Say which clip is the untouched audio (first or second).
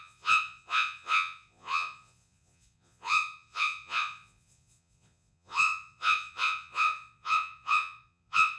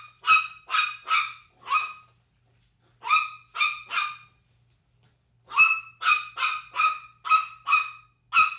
second